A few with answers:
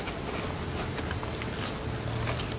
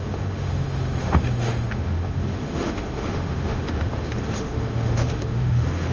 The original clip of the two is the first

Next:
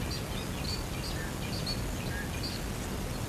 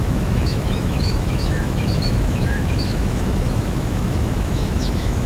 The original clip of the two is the first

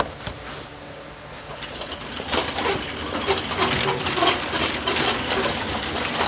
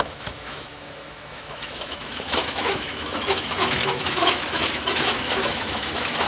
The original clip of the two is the first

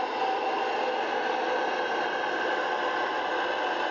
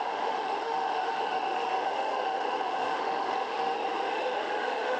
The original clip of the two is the first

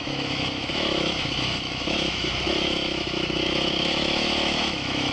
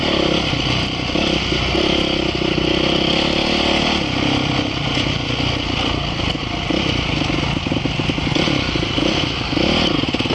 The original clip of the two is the second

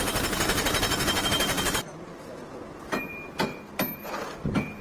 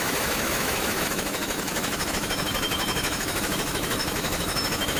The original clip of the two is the first